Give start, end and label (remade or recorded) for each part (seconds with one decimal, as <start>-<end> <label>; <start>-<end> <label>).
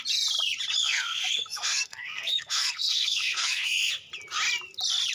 0.0-0.8 recorded; 0.8-3.9 remade; 3.9-5.1 recorded